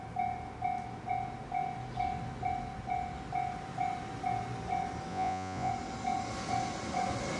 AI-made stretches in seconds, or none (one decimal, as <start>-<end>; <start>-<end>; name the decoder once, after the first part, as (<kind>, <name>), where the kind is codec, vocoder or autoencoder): 5.1-5.7 (vocoder, Vocos)